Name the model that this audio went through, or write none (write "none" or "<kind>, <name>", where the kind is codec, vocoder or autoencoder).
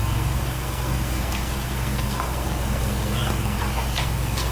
codec, SNAC